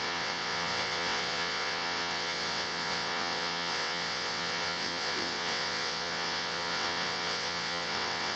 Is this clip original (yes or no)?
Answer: no